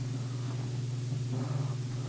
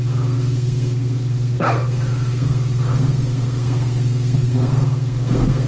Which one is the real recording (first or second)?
first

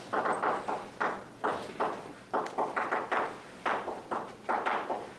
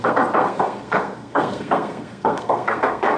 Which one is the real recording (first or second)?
first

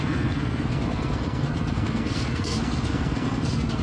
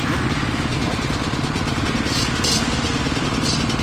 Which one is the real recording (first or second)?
second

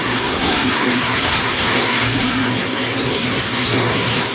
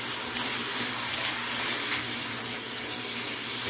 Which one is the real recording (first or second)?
second